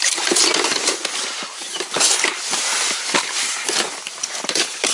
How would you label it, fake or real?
real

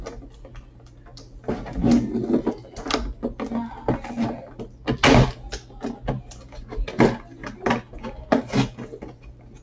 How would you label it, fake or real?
real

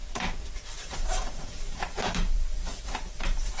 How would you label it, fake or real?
fake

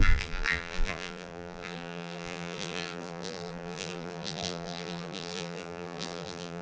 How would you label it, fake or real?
fake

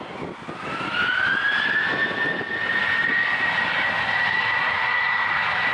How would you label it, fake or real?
real